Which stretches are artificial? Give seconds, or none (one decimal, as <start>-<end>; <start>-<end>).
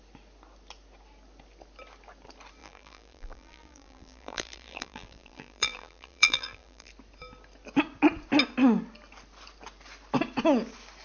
2.6-6.9